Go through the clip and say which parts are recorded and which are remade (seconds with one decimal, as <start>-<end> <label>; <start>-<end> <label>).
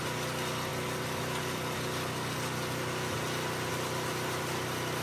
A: 0.0-5.0 recorded